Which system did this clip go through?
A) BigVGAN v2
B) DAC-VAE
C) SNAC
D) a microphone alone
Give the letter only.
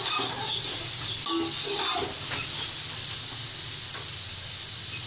D